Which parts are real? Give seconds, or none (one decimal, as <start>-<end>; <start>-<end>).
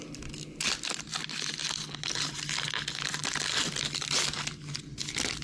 0.0-5.4